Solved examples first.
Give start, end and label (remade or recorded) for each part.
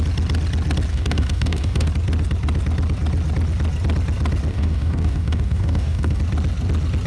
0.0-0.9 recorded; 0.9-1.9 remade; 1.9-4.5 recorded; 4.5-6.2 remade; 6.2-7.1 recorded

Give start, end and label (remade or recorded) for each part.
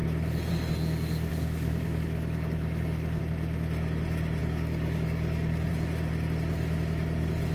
0.0-1.3 recorded; 1.3-3.2 remade; 3.2-4.4 recorded; 4.4-5.7 remade; 5.7-7.5 recorded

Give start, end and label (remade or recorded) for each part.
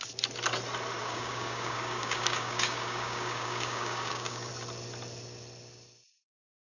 0.0-1.0 recorded; 1.0-4.5 remade; 4.5-6.8 recorded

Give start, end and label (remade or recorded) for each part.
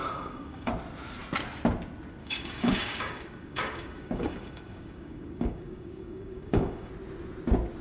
0.0-0.7 remade; 0.7-2.2 recorded; 2.2-6.9 remade; 6.9-7.8 recorded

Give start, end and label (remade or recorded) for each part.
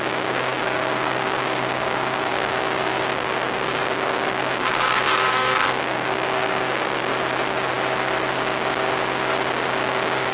0.0-7.1 remade; 7.1-9.8 recorded; 9.8-10.3 remade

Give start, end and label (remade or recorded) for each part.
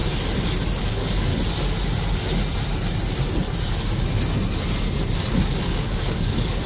0.0-0.8 recorded; 0.8-1.3 remade; 1.3-5.3 recorded; 5.3-6.7 remade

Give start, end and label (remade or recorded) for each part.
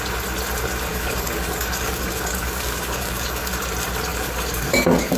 0.0-0.9 recorded; 0.9-3.5 remade; 3.5-4.1 recorded; 4.1-5.2 remade